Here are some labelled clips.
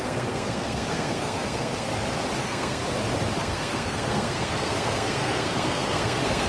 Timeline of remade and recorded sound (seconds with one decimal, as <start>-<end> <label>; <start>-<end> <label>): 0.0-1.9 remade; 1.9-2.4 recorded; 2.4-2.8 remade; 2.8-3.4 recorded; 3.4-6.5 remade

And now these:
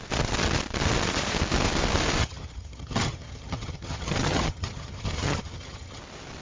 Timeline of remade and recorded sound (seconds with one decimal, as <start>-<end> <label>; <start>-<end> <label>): 0.0-2.2 recorded; 2.2-6.0 remade; 6.0-6.4 recorded

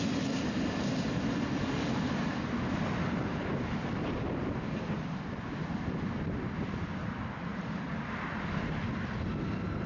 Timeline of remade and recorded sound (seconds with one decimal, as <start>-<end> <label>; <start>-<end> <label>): 0.0-9.9 recorded

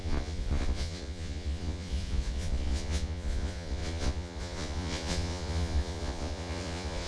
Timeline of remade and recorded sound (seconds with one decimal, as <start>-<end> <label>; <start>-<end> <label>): 0.0-7.1 remade

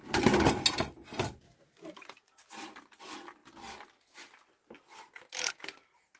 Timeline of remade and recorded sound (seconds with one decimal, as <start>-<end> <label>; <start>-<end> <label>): 0.0-6.2 recorded